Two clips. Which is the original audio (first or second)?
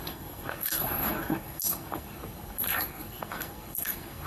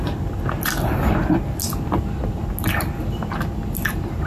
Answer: second